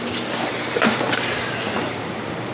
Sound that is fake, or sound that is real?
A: real